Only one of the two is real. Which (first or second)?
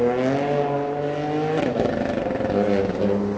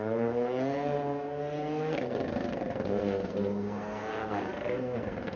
first